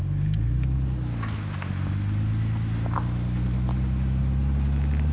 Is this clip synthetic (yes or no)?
no